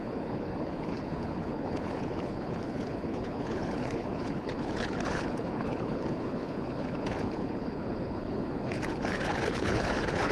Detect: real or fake fake